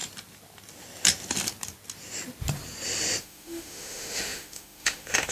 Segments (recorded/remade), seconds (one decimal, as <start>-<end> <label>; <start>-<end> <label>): 0.0-3.2 recorded; 3.2-5.3 remade